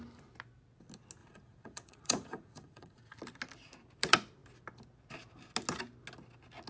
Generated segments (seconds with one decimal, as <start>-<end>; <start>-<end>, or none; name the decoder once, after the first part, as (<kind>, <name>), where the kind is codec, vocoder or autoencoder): 1.2-3.2 (vocoder, Vocos)